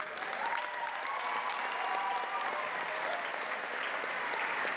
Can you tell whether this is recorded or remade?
recorded